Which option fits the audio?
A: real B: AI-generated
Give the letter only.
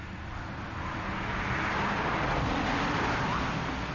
A